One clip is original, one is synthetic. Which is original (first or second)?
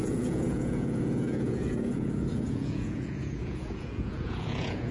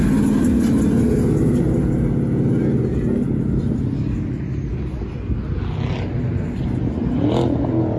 second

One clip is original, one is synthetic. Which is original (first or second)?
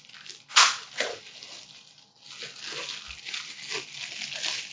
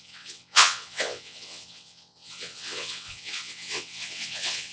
first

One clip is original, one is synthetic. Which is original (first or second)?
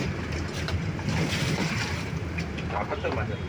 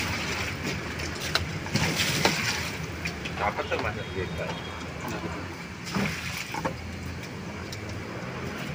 second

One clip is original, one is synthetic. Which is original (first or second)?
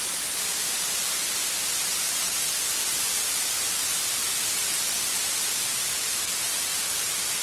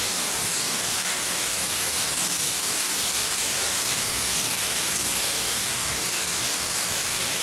first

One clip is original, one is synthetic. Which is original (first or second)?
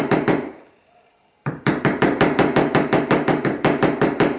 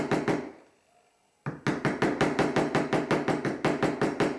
second